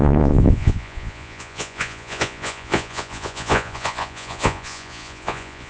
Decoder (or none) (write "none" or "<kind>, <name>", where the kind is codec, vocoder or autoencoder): vocoder, Vocos